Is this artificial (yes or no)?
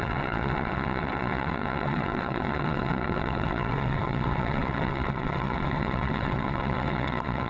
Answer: yes